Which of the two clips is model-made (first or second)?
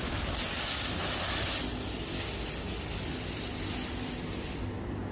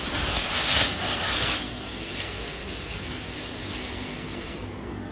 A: second